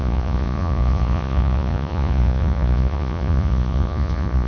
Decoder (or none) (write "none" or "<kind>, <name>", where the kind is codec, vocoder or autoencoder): vocoder, Vocos